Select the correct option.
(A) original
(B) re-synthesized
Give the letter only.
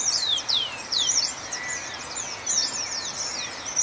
A